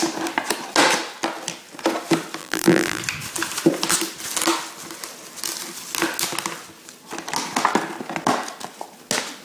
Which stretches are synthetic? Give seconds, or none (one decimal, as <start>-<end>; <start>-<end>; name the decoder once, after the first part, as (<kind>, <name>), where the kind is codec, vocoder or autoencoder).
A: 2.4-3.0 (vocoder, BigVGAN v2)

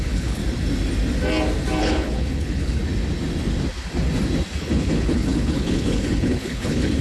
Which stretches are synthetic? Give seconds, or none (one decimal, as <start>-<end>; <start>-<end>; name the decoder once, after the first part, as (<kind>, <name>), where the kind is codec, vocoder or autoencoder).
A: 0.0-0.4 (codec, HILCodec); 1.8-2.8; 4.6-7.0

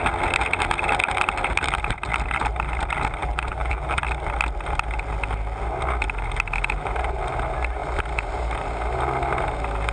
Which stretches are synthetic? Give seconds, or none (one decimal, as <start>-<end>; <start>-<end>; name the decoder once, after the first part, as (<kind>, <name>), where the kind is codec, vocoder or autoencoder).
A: 3.2-4.0 (vocoder, BigVGAN v2)